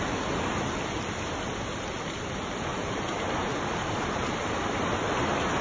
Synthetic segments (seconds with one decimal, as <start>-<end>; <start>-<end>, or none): 2.7-4.4